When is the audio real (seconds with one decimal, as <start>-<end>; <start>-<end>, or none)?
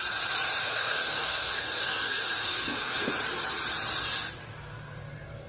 0.0-0.6; 3.1-5.5